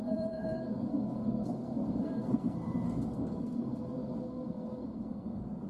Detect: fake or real fake